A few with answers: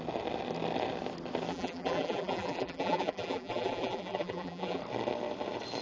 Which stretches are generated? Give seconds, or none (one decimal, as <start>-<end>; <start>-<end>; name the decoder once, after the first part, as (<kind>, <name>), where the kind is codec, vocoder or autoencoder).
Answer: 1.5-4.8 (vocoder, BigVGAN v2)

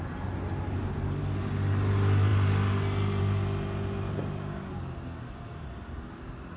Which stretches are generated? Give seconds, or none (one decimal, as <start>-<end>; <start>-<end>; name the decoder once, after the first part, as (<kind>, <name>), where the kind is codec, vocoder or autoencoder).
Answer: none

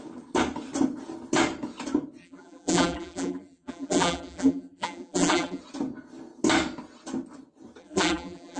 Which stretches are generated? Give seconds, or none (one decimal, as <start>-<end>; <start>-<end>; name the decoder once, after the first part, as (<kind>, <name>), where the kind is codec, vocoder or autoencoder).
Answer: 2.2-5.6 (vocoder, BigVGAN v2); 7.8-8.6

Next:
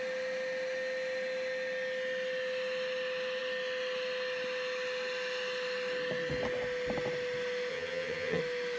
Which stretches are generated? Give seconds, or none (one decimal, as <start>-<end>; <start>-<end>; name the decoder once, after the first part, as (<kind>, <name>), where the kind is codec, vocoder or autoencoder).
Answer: 7.7-8.4 (vocoder, HiFi-GAN)

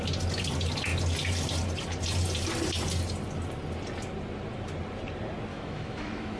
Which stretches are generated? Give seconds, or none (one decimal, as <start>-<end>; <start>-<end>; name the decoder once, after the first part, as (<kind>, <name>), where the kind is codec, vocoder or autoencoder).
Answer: 5.5-6.4 (autoencoder, DAC-VAE)

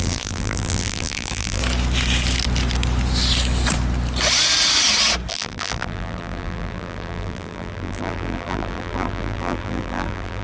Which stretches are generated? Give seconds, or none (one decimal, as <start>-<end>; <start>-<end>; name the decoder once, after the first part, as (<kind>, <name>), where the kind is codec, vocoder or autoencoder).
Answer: 0.0-1.6 (vocoder, BigVGAN v2); 5.3-10.4